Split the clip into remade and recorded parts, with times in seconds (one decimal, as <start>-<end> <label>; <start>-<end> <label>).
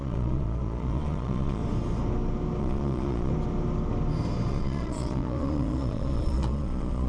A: 0.0-1.6 remade; 1.6-2.6 recorded; 2.6-3.3 remade; 3.3-4.5 recorded; 4.5-7.1 remade